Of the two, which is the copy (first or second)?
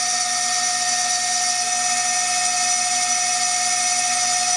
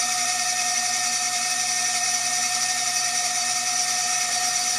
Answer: second